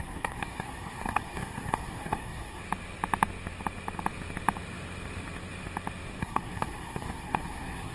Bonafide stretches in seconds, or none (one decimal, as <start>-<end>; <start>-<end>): 2.6-6.2

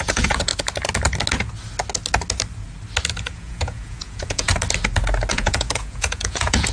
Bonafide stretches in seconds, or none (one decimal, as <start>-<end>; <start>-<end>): 0.5-3.2; 4.5-5.3

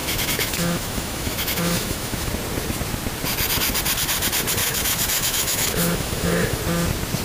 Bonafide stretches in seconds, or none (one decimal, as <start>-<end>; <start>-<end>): 2.3-4.6; 6.6-7.2

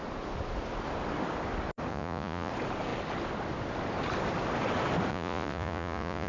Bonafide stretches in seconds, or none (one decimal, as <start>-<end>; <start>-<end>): 0.0-1.9; 2.5-5.1

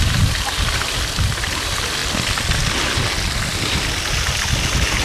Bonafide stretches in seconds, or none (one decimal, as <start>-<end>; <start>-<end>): 2.0-5.0